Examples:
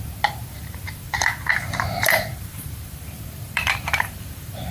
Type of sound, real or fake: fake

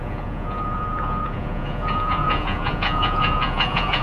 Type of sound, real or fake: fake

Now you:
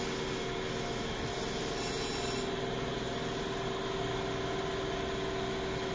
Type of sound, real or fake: real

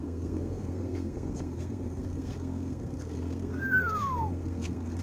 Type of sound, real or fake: fake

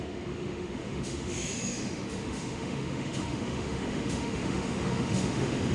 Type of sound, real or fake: fake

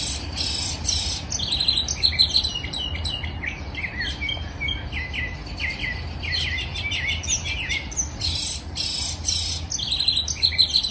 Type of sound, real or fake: real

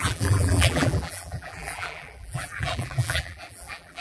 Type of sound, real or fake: fake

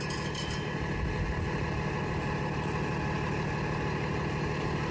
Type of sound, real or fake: real